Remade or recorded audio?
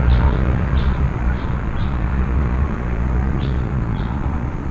remade